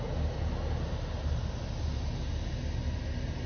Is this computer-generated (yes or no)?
no